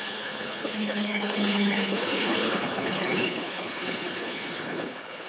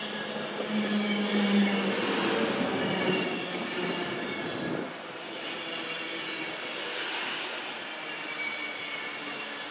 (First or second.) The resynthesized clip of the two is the first